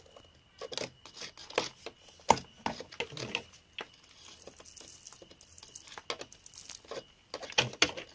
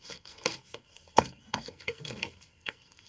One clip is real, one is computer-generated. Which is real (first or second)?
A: first